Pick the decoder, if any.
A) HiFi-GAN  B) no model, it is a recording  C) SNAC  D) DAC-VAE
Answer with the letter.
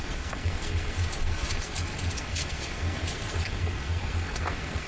C